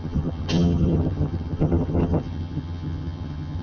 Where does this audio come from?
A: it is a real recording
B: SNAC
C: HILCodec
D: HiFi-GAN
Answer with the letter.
D